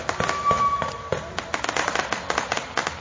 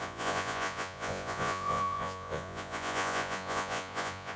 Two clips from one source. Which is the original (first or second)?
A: first